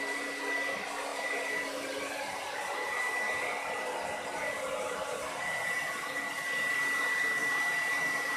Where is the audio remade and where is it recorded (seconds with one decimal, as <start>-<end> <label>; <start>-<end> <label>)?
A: 0.0-1.1 recorded; 1.1-3.0 remade; 3.0-7.4 recorded; 7.4-8.4 remade